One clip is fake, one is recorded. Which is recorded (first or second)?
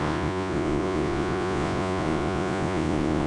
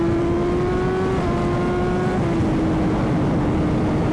second